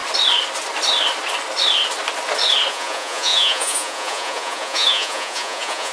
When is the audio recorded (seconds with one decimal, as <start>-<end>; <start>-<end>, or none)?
0.0-2.7